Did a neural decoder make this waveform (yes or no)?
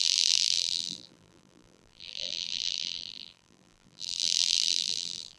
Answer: yes